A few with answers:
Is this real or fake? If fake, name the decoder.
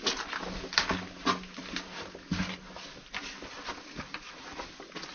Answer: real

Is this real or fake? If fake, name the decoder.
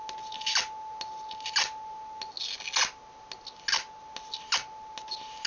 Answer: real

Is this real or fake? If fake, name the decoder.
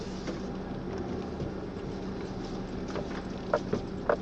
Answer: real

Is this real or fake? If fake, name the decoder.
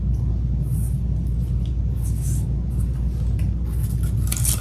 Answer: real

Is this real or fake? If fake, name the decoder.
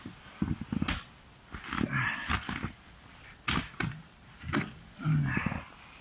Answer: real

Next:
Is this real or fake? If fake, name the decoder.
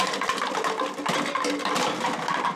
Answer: real